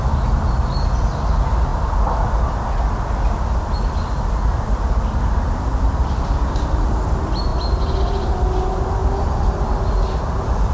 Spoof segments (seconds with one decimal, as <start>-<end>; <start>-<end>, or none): none